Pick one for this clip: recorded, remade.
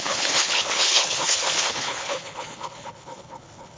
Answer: remade